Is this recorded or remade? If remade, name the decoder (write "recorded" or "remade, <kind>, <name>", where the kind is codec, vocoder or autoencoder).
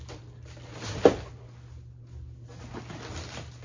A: recorded